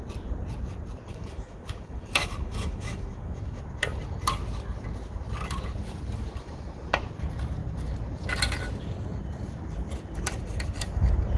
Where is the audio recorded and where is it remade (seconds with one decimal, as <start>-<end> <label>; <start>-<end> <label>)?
0.0-1.1 recorded; 1.1-3.6 remade; 3.6-11.4 recorded